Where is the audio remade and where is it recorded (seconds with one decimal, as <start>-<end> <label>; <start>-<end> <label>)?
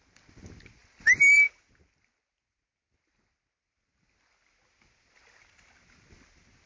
0.0-0.8 recorded; 0.8-1.7 remade; 1.7-6.7 recorded